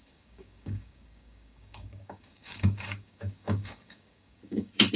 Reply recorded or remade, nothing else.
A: remade